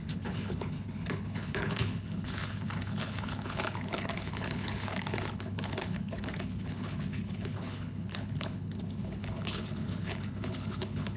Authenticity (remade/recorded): remade